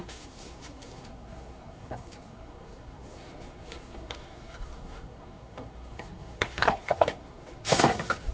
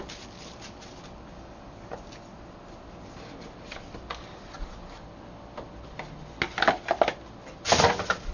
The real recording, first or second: second